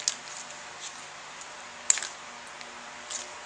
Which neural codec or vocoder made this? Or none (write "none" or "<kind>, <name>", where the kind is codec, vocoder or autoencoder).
none